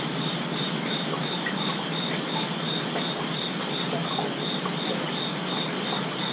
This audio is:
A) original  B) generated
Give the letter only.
A